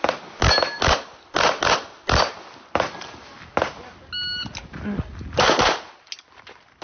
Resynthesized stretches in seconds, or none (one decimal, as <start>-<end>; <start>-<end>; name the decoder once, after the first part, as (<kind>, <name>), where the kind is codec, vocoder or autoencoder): none